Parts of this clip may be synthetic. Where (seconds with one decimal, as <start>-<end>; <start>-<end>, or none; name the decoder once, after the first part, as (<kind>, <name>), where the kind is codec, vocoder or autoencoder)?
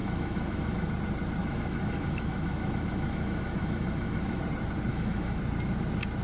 0.0-0.9 (autoencoder, DAC-VAE); 1.4-4.4; 4.9-5.4